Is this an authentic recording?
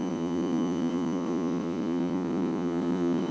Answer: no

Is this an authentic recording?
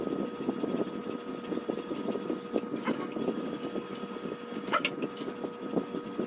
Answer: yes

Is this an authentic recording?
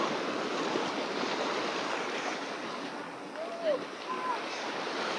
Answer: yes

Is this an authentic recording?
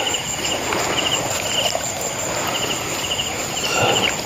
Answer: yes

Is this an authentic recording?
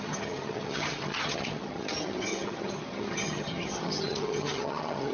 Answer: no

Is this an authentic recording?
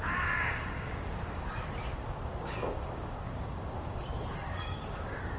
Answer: no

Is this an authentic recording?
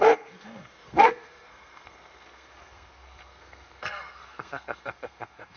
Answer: no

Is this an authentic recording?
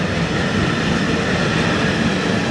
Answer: yes